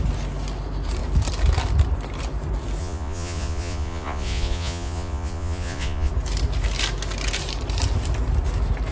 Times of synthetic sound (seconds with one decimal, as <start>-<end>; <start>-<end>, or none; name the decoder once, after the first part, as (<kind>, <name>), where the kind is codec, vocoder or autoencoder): 2.8-6.1 (vocoder, Vocos)